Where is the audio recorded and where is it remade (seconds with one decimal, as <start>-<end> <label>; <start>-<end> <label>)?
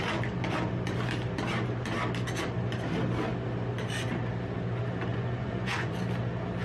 0.0-5.1 recorded; 5.1-5.9 remade; 5.9-6.6 recorded